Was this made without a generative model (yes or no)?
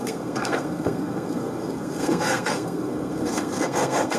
no